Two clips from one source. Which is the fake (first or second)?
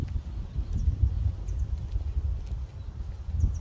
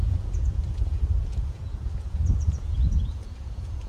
second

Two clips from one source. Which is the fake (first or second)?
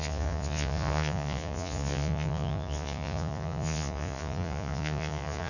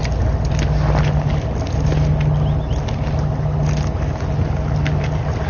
first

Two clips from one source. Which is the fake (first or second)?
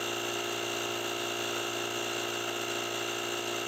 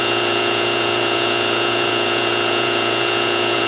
second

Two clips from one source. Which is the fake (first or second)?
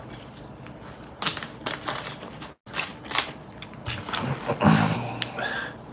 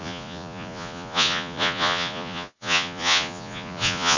second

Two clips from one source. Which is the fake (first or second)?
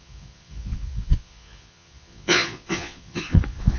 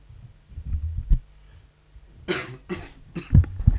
first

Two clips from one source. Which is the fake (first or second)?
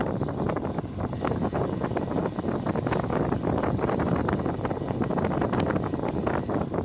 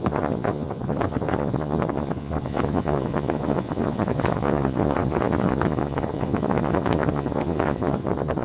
second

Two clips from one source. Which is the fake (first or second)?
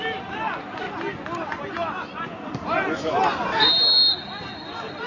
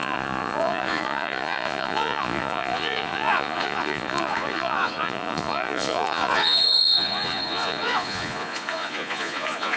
second